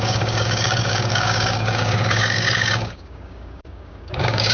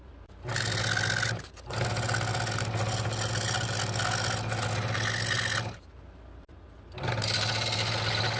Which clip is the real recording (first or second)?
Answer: second